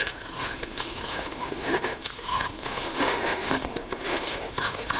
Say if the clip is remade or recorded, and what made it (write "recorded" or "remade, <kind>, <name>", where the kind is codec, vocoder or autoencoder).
remade, autoencoder, DAC-VAE